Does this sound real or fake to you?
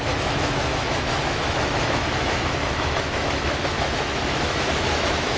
fake